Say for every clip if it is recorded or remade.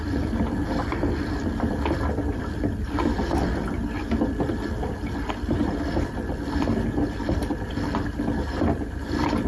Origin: remade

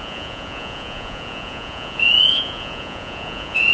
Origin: remade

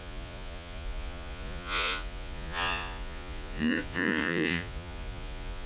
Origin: remade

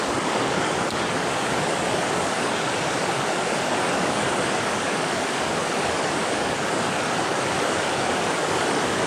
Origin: remade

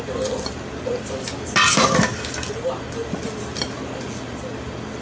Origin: recorded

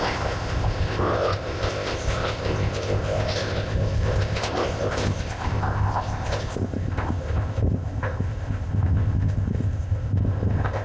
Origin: remade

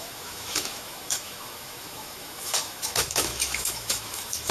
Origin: remade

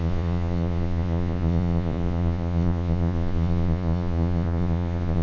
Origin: remade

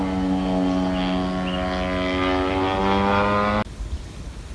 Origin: recorded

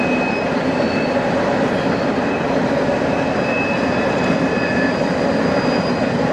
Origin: recorded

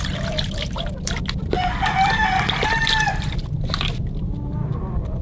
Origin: recorded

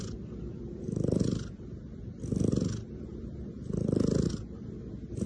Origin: recorded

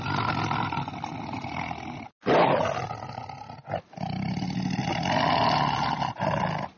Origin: recorded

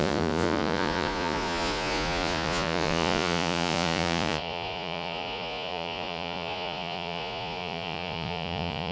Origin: remade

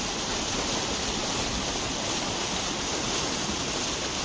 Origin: recorded